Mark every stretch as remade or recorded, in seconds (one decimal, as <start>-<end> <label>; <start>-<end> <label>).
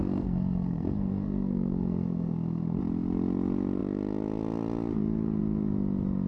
0.0-2.8 remade; 2.8-6.3 recorded